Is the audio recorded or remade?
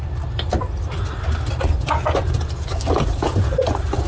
recorded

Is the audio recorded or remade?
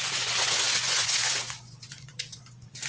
remade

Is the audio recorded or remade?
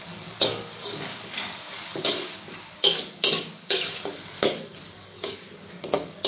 remade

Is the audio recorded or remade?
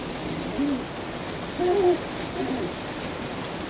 recorded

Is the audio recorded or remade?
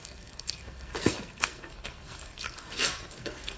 remade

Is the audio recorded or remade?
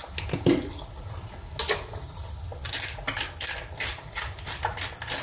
recorded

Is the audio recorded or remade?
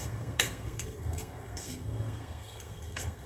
remade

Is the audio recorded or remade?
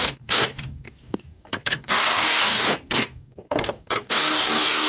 remade